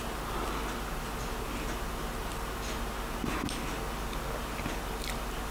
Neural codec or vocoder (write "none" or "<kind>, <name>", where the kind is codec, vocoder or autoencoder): none